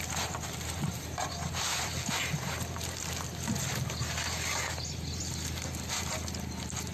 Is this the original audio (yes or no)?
no